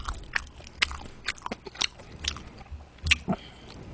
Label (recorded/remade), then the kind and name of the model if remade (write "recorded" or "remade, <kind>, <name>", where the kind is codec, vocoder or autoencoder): recorded